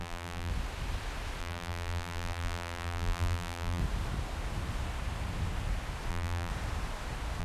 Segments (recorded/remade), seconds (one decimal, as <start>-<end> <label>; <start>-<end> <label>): 0.0-0.5 remade; 0.5-1.4 recorded; 1.4-3.8 remade; 3.8-6.1 recorded; 6.1-6.5 remade; 6.5-7.4 recorded